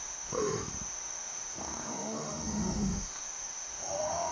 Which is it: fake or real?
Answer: fake